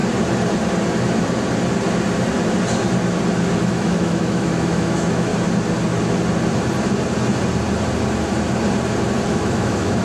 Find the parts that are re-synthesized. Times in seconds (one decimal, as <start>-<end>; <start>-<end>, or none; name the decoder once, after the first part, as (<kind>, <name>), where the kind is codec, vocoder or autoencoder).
3.6-5.3 (autoencoder, DAC-VAE); 9.3-10.0